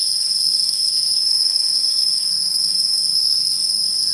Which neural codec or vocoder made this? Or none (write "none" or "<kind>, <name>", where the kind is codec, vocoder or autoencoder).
codec, SNAC